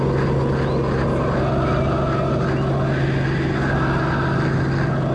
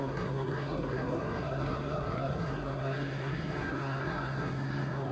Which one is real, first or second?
first